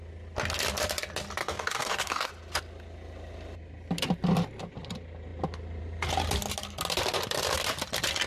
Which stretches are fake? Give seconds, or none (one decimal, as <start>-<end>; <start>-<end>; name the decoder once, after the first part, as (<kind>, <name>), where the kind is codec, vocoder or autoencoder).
1.4-2.3 (codec, DAC)